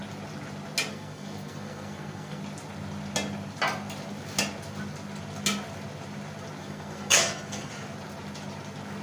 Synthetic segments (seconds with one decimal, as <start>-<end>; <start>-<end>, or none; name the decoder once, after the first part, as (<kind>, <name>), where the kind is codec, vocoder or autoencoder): 0.9-2.4 (codec, SNAC); 6.6-7.7

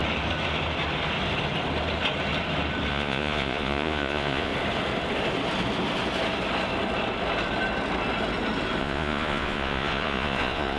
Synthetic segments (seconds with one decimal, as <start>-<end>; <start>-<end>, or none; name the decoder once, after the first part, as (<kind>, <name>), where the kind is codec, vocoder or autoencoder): 2.9-4.5 (vocoder, Vocos); 8.8-10.8

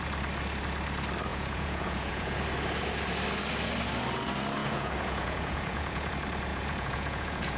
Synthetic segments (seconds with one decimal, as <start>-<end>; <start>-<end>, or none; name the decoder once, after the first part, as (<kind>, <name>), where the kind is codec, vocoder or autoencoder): 1.3-2.4 (vocoder, Vocos); 4.6-6.1; 6.5-7.6

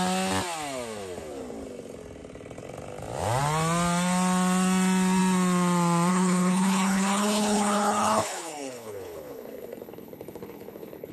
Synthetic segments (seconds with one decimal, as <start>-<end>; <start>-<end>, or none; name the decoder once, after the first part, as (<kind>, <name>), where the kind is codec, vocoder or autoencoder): 6.1-11.1 (codec, HILCodec)

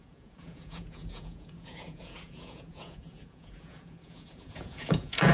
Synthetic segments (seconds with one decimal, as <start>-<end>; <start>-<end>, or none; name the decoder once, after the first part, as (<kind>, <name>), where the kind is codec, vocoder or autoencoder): 0.0-5.3 (vocoder, Vocos)

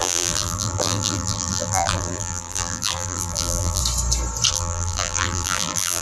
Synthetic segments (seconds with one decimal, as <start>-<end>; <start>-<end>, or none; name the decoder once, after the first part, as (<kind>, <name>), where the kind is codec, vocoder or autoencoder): 0.0-3.8 (vocoder, BigVGAN v2); 4.5-6.0

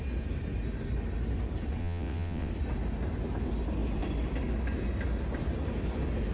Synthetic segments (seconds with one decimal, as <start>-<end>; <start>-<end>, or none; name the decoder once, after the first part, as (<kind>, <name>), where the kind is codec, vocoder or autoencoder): 1.8-2.5 (vocoder, WaveNeXt)

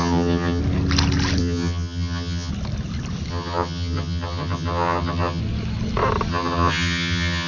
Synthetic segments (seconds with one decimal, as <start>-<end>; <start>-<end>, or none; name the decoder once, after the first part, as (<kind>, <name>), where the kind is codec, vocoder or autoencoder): 0.0-0.6 (vocoder, HiFi-GAN); 1.4-2.5; 3.3-5.4; 6.3-7.5